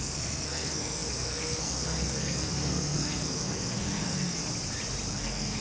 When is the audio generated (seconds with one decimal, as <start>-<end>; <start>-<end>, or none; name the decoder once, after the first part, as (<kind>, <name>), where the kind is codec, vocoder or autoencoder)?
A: 0.0-4.4 (codec, SNAC); 5.1-5.6